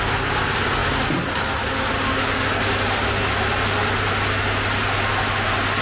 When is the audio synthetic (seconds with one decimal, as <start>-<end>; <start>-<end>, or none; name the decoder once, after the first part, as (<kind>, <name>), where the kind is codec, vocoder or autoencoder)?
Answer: none